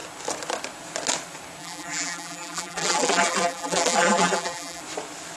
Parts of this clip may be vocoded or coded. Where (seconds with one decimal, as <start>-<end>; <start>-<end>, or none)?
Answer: 1.6-4.8